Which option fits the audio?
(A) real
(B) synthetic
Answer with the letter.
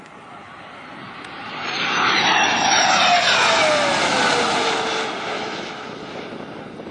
A